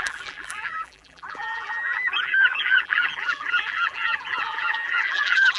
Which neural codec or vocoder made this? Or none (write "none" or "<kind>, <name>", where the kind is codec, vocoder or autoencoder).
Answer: vocoder, BigVGAN v2